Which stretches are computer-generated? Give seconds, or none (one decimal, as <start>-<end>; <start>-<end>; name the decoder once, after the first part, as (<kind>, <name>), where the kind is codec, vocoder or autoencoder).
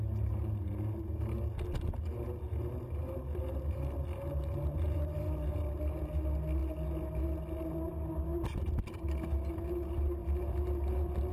none